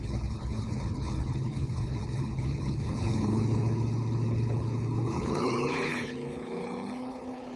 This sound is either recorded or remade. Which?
remade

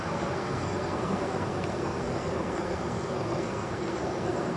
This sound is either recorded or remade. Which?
remade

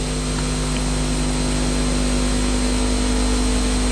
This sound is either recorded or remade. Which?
recorded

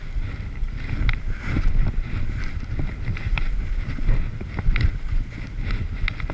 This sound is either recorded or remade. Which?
recorded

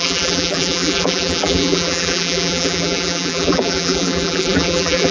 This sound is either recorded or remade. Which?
remade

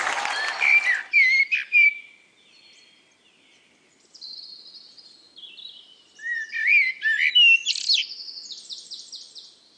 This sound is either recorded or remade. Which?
remade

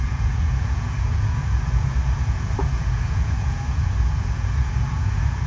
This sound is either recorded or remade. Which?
remade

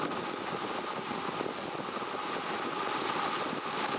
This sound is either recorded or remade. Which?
recorded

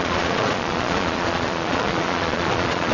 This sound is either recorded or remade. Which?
remade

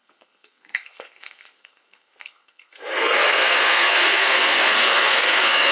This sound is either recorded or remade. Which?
remade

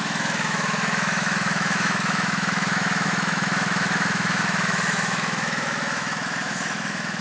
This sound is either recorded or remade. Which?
remade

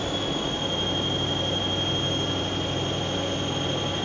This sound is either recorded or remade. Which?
recorded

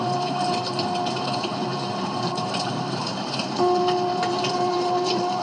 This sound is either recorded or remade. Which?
remade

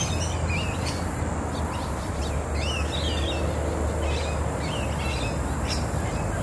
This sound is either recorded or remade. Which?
recorded